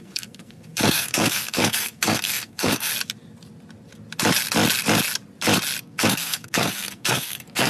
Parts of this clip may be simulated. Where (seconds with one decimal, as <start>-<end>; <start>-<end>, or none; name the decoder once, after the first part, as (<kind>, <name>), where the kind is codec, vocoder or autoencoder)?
0.0-2.9 (codec, SNAC); 5.8-7.7